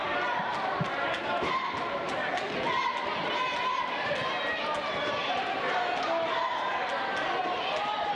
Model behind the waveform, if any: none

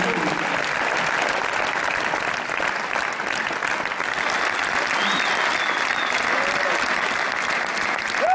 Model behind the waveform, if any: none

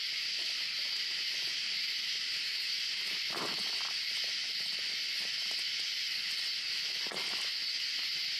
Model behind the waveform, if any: none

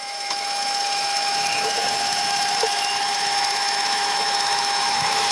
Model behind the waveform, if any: autoencoder, DAC-VAE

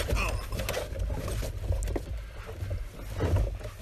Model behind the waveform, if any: none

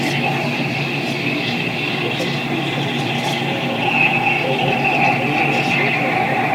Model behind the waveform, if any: none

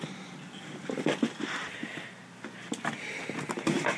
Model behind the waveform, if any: none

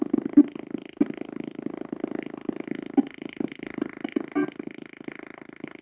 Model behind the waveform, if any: none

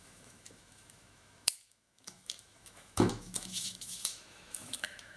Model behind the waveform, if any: autoencoder, DAC-VAE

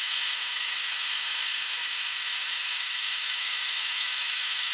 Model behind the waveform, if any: autoencoder, DAC-VAE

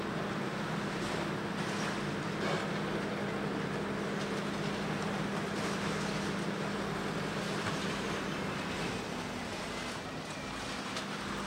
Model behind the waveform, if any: none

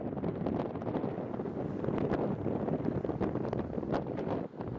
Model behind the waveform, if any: none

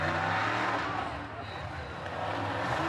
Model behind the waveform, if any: none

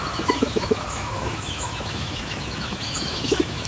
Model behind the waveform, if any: autoencoder, DAC-VAE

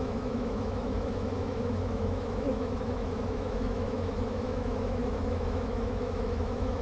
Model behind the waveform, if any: autoencoder, DAC-VAE